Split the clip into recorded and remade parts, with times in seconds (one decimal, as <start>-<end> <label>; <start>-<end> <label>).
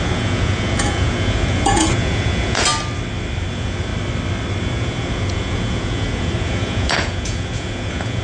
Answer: 0.0-2.7 remade; 2.7-3.5 recorded; 3.5-3.9 remade; 3.9-4.6 recorded; 4.6-8.2 remade